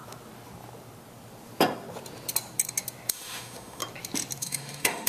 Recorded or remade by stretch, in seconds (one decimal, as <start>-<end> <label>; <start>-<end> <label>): 0.0-3.1 recorded; 3.1-3.8 remade; 3.8-4.4 recorded; 4.4-5.1 remade